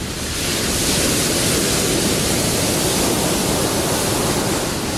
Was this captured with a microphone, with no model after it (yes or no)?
yes